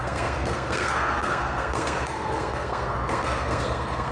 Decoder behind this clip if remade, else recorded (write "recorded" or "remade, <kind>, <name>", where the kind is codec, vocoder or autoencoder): remade, codec, SNAC